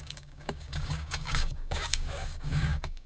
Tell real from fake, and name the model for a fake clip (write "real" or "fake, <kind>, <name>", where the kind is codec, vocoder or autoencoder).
fake, codec, DAC